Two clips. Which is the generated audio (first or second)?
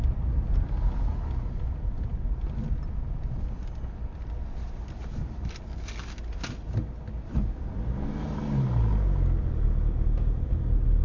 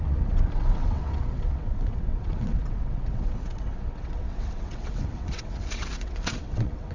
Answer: second